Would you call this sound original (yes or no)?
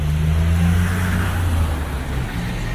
yes